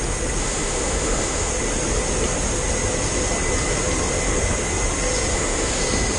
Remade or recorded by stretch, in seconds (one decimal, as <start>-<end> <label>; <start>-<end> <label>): 0.0-0.4 recorded; 0.4-1.5 remade; 1.5-5.3 recorded; 5.3-5.8 remade; 5.8-6.2 recorded

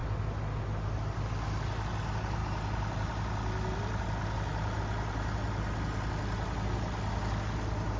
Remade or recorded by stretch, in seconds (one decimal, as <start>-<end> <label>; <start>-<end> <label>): 0.0-8.0 recorded